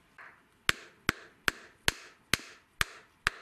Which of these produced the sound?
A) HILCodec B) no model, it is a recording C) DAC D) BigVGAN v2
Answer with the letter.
B